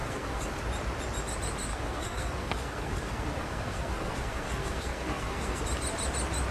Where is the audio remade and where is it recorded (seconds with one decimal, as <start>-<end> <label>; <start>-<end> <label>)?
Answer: 0.0-0.6 remade; 0.6-1.7 recorded; 1.7-5.6 remade; 5.6-6.5 recorded